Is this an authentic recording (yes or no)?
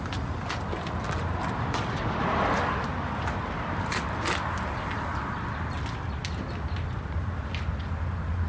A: yes